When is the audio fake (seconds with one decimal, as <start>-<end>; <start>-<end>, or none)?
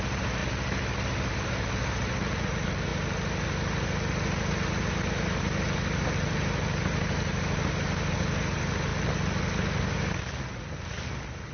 0.0-0.4; 1.3-2.9; 6.1-8.9; 10.7-11.5